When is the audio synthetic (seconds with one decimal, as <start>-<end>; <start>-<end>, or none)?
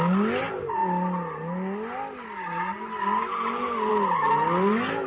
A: none